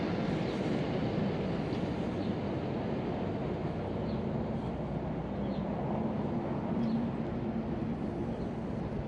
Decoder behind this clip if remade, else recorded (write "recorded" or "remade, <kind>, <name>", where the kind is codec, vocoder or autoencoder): recorded